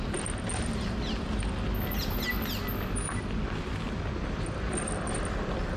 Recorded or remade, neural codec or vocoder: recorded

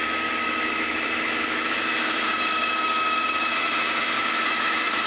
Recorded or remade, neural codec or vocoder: remade, autoencoder, DAC-VAE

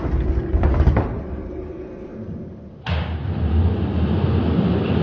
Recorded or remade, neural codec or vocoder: recorded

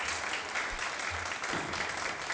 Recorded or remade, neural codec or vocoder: recorded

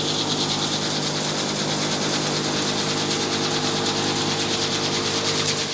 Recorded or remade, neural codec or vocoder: recorded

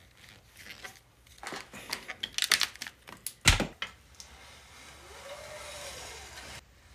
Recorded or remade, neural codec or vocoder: recorded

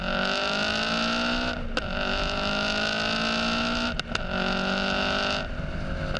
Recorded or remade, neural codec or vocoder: recorded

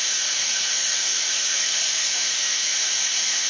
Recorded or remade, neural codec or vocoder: remade, autoencoder, DAC-VAE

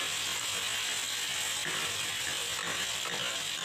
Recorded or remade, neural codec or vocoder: recorded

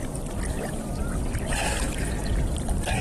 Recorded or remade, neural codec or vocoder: recorded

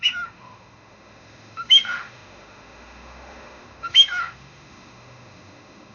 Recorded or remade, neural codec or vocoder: remade, autoencoder, DAC-VAE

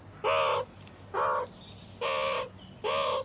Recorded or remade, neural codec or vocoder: recorded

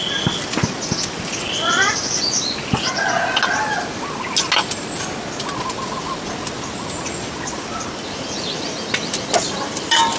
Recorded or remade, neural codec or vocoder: recorded